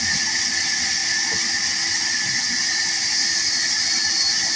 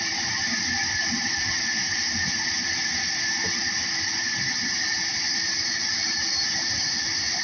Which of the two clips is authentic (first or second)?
first